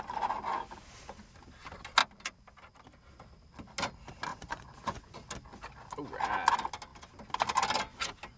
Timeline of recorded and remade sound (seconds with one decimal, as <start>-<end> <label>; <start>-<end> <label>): 0.0-4.3 recorded; 4.3-5.3 remade; 5.3-8.4 recorded